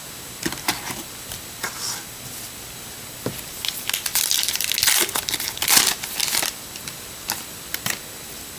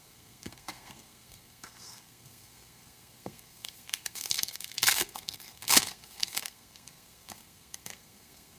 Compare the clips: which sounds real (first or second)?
first